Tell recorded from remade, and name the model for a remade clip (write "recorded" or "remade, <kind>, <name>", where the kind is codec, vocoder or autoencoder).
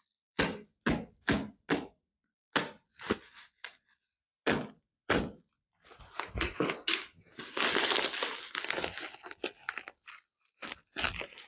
recorded